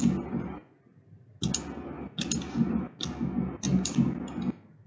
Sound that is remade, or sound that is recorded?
recorded